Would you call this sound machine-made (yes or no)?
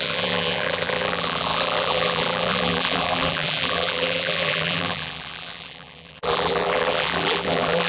yes